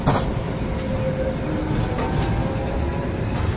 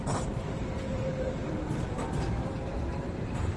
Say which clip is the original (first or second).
first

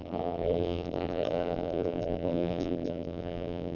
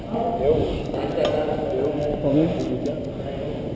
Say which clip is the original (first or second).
second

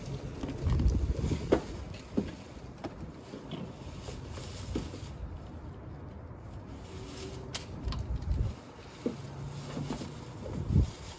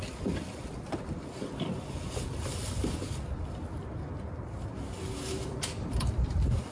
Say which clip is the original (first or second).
first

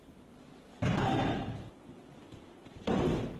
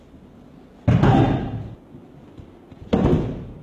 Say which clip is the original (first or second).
second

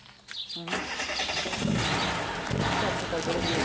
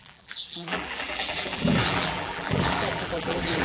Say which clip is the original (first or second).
first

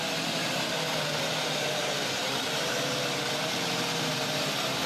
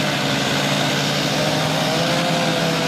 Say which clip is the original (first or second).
second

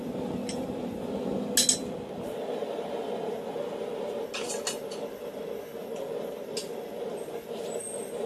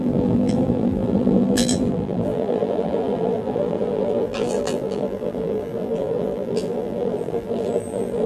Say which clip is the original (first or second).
first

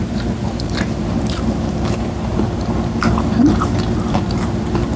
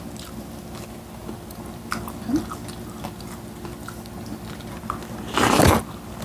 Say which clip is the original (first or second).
second